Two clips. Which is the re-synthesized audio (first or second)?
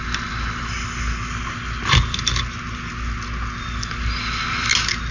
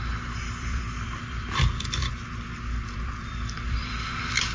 second